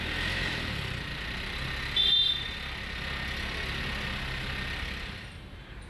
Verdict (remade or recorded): recorded